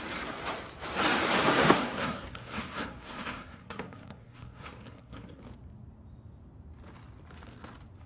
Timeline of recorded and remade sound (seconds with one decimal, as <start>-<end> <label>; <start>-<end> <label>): 0.0-1.5 recorded; 1.5-5.4 remade; 5.4-8.1 recorded

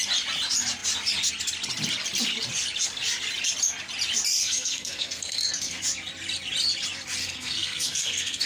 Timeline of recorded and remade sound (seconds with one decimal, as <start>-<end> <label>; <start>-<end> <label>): 0.0-4.4 recorded; 4.4-5.8 remade; 5.8-7.2 recorded; 7.2-8.5 remade

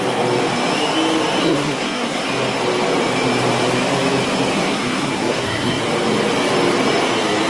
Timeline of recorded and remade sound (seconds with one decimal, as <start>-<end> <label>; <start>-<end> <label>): 0.0-1.4 recorded; 1.4-2.3 remade; 2.3-4.5 recorded; 4.5-5.8 remade; 5.8-7.5 recorded

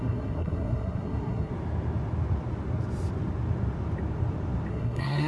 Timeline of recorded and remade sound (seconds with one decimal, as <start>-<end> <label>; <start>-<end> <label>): 0.0-1.5 remade; 1.5-4.7 recorded; 4.7-5.3 remade